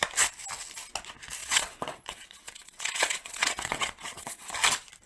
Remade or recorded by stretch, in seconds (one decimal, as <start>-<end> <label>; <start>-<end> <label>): 0.0-1.4 recorded; 1.4-4.5 remade; 4.5-5.1 recorded